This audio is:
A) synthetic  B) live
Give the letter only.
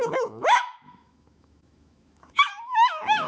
A